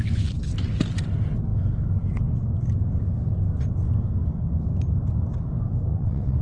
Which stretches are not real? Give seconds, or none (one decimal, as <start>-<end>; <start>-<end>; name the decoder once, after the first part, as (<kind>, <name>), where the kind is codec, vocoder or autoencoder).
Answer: 5.9-6.4 (vocoder, WaveNeXt)